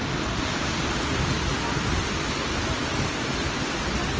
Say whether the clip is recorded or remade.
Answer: recorded